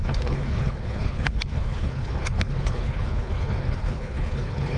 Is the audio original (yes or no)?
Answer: no